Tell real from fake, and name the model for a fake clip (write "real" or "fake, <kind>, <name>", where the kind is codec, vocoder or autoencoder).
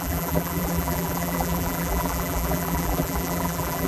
fake, vocoder, BigVGAN v2